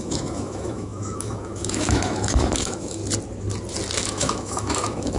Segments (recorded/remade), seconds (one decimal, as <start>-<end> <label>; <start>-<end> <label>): 0.0-3.0 remade; 3.0-4.0 recorded; 4.0-5.2 remade